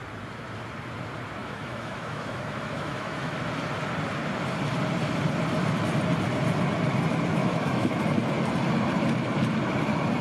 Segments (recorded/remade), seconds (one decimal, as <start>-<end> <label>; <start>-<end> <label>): 0.0-1.4 recorded; 1.4-3.4 remade; 3.4-7.4 recorded; 7.4-8.0 remade; 8.0-10.2 recorded